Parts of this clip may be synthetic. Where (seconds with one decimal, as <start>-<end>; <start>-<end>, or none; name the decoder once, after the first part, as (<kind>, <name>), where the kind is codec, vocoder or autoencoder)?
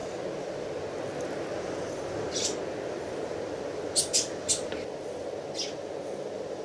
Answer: none